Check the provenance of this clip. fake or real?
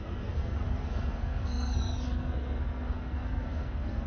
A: fake